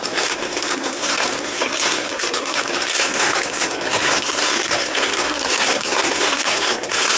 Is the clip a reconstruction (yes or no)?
yes